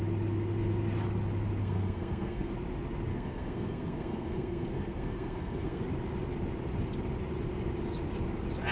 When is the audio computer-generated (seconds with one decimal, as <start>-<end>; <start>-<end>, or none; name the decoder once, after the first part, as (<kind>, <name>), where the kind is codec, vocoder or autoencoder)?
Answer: 1.6-2.5 (codec, SNAC); 3.1-5.8